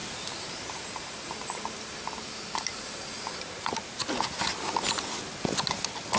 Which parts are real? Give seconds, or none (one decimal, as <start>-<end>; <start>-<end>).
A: 3.7-6.2